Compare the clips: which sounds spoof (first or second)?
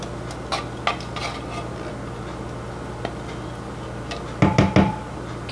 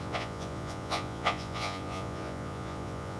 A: second